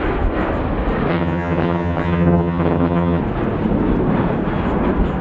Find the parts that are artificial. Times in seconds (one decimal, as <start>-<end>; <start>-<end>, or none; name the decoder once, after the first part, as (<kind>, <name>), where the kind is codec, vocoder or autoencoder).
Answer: 1.1-3.2 (vocoder, HiFi-GAN)